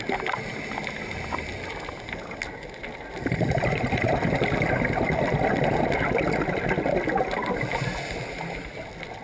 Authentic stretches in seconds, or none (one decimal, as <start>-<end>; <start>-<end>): 0.0-9.2